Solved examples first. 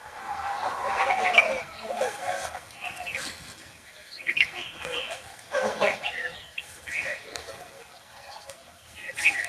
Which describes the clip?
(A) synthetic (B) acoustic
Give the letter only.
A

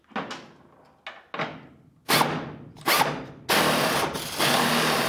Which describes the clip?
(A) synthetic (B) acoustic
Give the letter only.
B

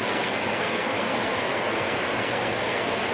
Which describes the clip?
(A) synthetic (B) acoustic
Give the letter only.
A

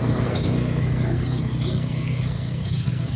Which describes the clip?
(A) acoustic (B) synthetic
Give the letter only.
B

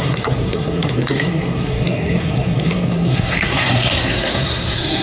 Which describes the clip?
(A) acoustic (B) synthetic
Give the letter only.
B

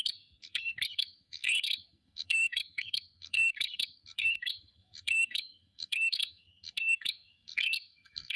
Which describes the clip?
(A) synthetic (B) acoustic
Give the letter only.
A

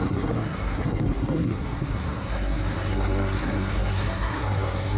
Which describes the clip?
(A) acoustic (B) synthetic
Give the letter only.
B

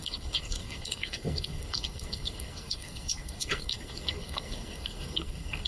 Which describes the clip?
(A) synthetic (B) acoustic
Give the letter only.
A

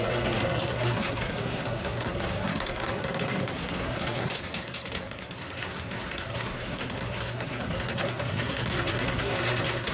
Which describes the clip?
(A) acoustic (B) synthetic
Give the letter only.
B